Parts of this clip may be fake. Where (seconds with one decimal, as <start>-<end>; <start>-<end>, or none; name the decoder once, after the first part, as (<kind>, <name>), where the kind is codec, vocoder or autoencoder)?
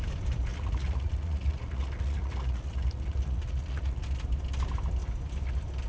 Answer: 0.5-4.0 (vocoder, Vocos)